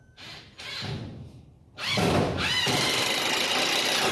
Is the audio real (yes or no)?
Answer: yes